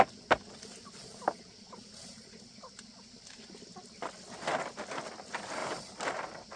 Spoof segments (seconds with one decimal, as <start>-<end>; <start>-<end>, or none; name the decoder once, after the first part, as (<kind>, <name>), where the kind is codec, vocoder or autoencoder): none